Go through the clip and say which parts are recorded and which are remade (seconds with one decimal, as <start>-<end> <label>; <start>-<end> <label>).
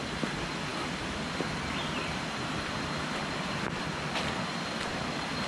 0.0-5.5 recorded